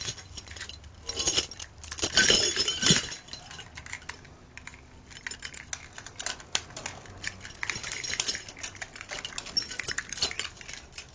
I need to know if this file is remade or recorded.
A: recorded